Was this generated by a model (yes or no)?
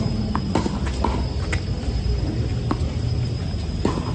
no